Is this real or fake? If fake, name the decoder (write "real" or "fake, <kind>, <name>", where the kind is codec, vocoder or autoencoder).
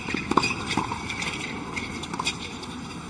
fake, vocoder, BigVGAN v2